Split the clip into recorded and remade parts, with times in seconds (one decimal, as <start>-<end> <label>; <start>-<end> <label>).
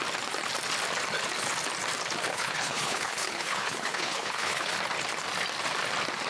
0.0-2.3 recorded; 2.3-4.7 remade; 4.7-6.3 recorded